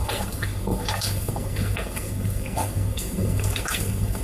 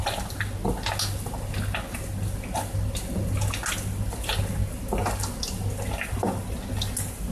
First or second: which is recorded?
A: second